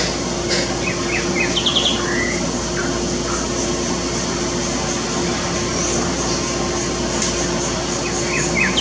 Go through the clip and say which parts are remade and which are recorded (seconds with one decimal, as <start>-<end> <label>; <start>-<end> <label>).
0.0-8.8 recorded